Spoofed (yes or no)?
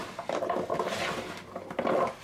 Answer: no